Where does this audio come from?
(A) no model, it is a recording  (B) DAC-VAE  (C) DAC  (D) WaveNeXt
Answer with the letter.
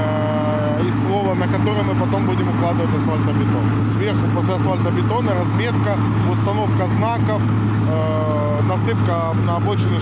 A